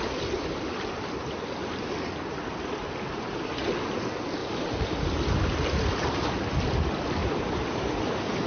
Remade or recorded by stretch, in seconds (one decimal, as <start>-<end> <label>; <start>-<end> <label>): 0.0-2.8 recorded; 2.8-3.6 remade; 3.6-4.4 recorded; 4.4-5.0 remade; 5.0-7.2 recorded; 7.2-7.9 remade; 7.9-8.5 recorded